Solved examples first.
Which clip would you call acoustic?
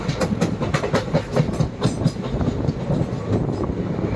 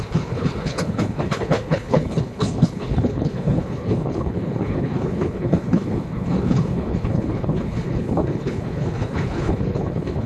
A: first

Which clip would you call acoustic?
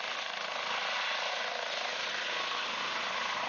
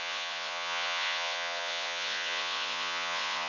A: first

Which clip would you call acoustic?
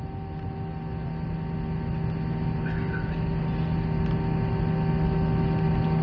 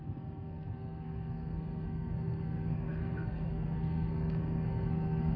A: first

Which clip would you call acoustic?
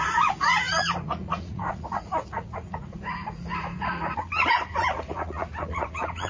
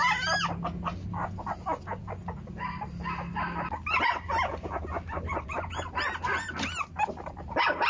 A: second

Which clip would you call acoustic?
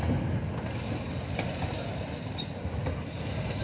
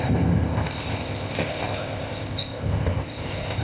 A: first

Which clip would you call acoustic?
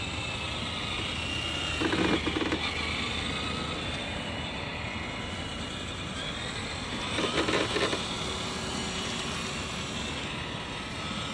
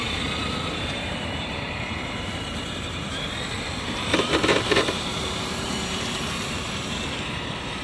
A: first